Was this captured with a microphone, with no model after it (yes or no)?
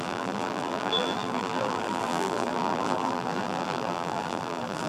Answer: no